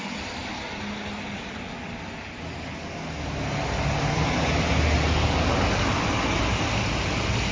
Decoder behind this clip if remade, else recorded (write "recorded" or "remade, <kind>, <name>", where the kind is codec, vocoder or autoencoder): recorded